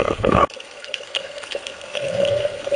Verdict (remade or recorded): remade